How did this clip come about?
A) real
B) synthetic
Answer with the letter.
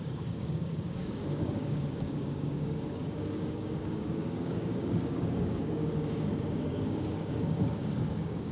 B